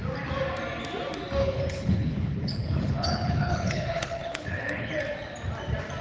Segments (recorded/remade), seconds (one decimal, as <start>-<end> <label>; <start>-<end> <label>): 0.0-1.4 recorded; 1.4-5.0 remade; 5.0-6.0 recorded